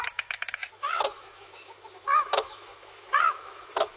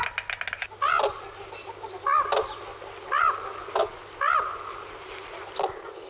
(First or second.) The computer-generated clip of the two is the first